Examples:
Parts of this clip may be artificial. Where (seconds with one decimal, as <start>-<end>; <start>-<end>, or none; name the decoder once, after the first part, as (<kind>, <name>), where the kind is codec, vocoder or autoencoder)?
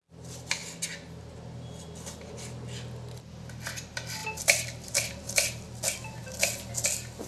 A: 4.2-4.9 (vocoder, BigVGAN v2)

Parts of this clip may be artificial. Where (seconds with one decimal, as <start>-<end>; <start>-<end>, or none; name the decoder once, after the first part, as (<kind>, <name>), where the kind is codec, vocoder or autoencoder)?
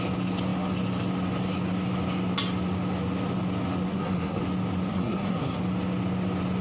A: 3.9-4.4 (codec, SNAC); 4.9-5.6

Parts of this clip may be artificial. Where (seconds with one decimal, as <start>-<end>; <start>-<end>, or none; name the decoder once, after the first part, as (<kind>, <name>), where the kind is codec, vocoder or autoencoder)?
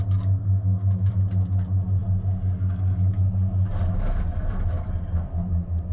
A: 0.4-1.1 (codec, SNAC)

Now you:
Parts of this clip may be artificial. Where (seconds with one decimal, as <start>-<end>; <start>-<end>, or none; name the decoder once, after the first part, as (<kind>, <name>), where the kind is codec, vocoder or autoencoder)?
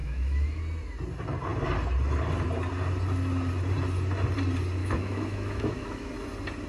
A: 0.0-0.6 (autoencoder, DAC-VAE); 4.8-6.1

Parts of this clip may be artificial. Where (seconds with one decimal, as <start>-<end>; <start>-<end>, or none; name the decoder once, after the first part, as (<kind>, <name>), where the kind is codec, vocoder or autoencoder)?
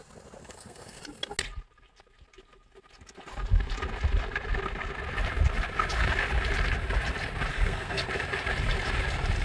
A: 0.4-1.0 (codec, SNAC); 7.5-8.0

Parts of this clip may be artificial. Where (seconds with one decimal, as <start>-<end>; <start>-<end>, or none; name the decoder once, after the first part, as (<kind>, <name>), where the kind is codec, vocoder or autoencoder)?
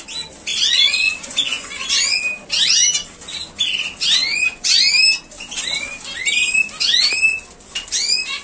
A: 0.5-2.2 (vocoder, Vocos); 4.2-4.8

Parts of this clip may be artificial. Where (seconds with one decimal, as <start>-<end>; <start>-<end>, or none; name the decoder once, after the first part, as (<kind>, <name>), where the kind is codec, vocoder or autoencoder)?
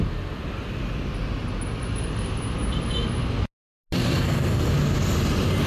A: 4.0-4.7 (codec, SNAC)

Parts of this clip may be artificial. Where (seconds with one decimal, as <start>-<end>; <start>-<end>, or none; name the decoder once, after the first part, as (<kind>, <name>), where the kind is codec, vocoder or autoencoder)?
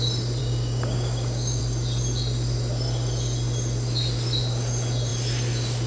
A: 0.4-1.6 (codec, DAC)